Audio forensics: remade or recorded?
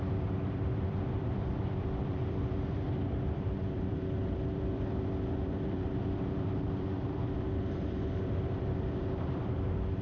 remade